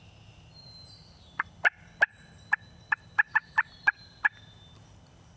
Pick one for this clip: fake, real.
real